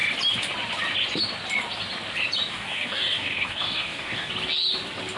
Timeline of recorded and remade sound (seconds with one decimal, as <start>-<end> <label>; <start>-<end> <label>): 0.0-2.5 recorded; 2.5-4.3 remade; 4.3-5.2 recorded